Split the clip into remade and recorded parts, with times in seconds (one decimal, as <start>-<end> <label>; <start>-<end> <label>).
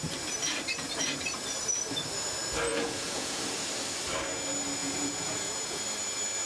0.0-2.7 recorded; 2.7-3.4 remade; 3.4-4.8 recorded; 4.8-5.8 remade; 5.8-6.5 recorded